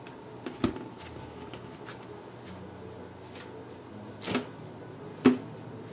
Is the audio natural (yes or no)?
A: yes